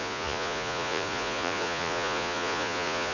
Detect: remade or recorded remade